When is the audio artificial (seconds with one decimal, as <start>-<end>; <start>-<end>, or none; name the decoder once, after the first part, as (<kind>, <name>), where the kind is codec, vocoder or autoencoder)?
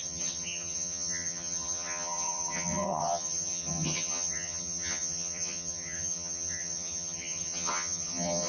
0.0-8.5 (vocoder, HiFi-GAN)